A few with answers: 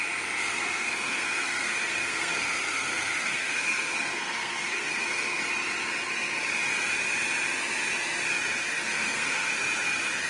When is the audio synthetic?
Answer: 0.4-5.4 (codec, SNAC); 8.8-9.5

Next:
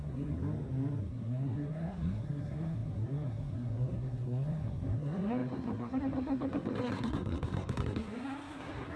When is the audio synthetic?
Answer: 0.0-0.4 (codec, SNAC); 1.0-9.0

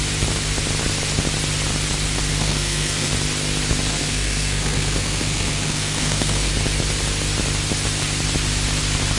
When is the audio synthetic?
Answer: 2.3-3.1 (codec, SNAC); 3.9-6.5

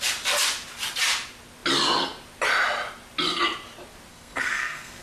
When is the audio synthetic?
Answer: 4.1-5.0 (codec, SNAC)

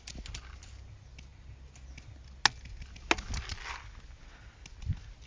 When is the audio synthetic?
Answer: none

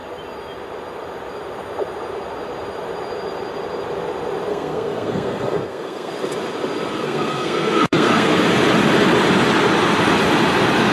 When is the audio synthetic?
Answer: 4.5-6.1 (codec, SNAC); 7.0-8.4

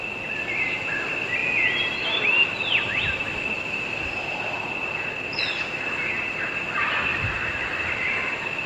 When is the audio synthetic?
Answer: none

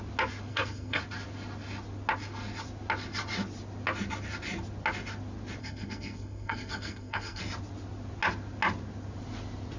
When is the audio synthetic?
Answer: 0.5-1.0 (codec, SNAC); 5.6-7.4